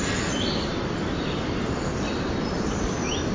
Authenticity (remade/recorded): recorded